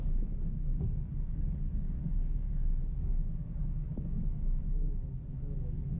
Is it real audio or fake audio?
fake